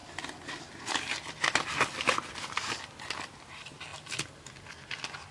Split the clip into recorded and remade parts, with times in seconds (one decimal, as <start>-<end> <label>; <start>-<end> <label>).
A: 0.0-5.3 recorded